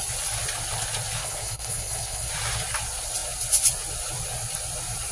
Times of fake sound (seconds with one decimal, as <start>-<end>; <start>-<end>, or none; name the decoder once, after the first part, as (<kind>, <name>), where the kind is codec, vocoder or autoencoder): 1.2-2.3 (codec, HILCodec)